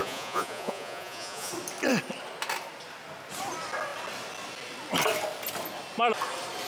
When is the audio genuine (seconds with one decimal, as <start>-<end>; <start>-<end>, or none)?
1.5-6.7